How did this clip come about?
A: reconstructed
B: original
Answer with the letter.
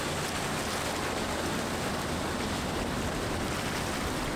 B